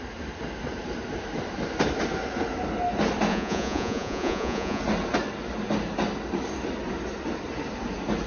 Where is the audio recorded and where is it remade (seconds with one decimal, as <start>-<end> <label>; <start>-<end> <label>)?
0.0-3.3 recorded; 3.3-4.8 remade; 4.8-8.3 recorded